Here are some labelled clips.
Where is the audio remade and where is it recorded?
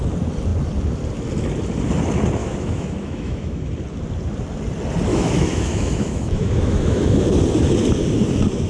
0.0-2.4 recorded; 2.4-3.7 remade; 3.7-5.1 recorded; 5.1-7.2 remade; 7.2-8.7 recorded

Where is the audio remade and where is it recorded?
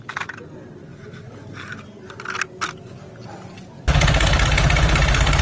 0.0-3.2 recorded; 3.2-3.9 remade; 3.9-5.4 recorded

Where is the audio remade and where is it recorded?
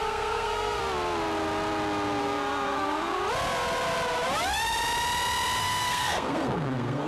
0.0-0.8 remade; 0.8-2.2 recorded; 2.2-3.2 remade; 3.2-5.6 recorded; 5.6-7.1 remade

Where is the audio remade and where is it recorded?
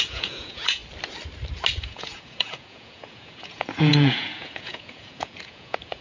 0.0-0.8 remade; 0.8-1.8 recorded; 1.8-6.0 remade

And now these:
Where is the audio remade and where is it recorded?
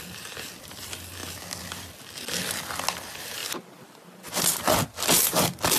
0.0-5.8 recorded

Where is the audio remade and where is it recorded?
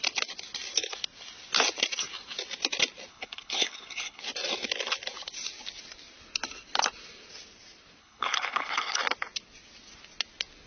0.0-3.1 recorded; 3.1-4.2 remade; 4.2-8.0 recorded; 8.0-9.0 remade; 9.0-10.7 recorded